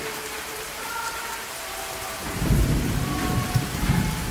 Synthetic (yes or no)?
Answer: yes